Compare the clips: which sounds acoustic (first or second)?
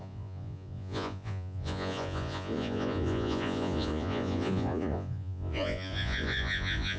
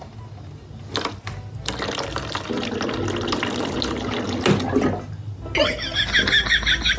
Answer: second